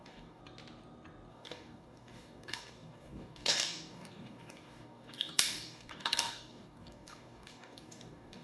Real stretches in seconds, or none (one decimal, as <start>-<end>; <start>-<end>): 0.4-1.3